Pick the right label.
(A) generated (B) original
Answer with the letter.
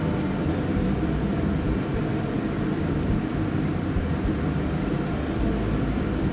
A